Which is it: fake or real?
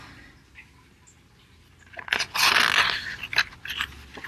real